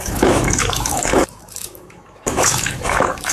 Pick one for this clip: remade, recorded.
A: remade